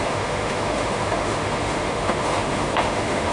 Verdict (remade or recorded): remade